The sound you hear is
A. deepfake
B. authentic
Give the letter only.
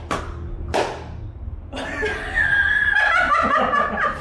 B